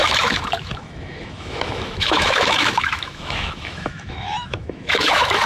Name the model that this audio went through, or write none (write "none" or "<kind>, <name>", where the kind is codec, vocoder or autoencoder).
autoencoder, DAC-VAE